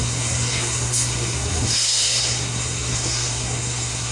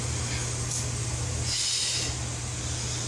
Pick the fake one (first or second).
first